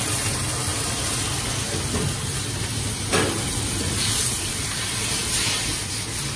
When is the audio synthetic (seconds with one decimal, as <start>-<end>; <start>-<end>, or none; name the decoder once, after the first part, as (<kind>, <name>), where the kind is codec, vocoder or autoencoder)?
none